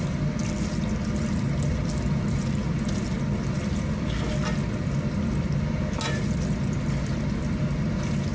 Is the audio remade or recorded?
recorded